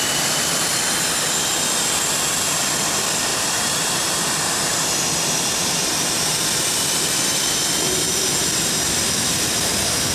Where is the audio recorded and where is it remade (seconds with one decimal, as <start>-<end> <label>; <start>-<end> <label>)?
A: 0.0-3.3 recorded; 3.3-4.9 remade; 4.9-10.1 recorded